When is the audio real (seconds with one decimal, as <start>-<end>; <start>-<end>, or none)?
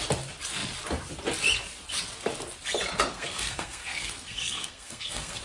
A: 0.0-3.1